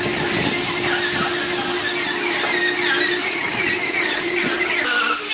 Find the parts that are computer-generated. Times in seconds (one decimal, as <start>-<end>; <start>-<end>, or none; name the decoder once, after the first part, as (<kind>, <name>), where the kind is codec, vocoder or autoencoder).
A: 3.2-4.7 (vocoder, WaveNeXt)